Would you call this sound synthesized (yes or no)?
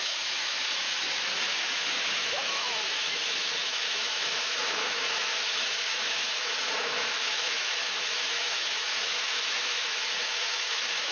yes